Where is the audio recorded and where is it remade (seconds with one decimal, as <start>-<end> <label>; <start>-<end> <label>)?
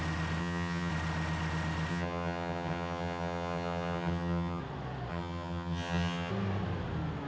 0.0-0.4 recorded; 0.4-0.9 remade; 0.9-1.9 recorded; 1.9-4.6 remade; 4.6-5.1 recorded; 5.1-6.3 remade; 6.3-7.3 recorded